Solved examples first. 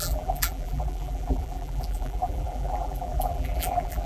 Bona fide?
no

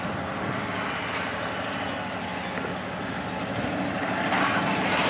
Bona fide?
yes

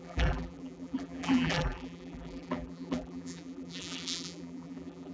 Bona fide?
no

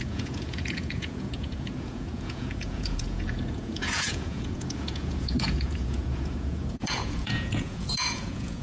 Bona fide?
no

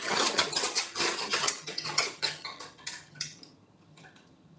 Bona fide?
no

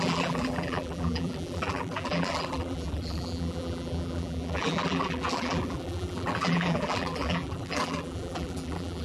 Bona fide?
no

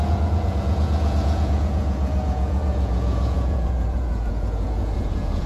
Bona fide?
no